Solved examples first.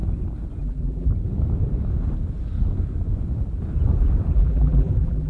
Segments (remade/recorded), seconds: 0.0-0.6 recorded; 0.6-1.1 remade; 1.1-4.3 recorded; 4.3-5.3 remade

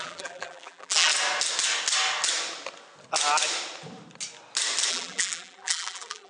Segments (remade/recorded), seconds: 0.0-1.1 remade; 1.1-4.9 recorded; 4.9-6.3 remade

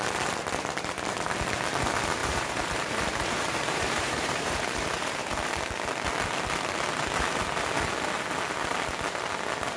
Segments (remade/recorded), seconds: 0.0-2.2 recorded; 2.2-5.5 remade; 5.5-9.8 recorded